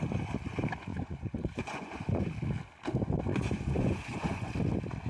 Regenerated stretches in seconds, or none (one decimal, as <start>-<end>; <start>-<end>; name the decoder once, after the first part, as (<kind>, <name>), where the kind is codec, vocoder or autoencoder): 0.9-2.3 (vocoder, Vocos); 3.3-4.5